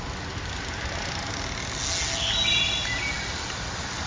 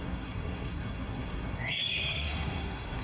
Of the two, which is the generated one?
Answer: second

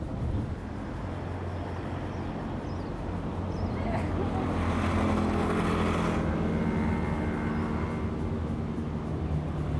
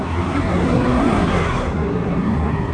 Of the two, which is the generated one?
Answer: second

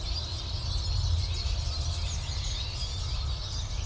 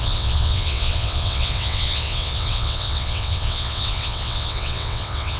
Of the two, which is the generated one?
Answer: second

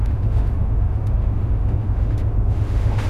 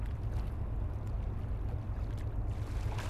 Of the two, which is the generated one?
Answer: first